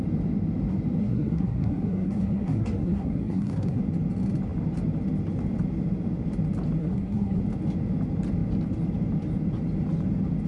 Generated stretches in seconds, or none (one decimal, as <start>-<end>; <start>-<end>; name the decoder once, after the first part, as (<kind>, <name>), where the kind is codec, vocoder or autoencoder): 1.0-3.8 (codec, SNAC); 6.8-7.4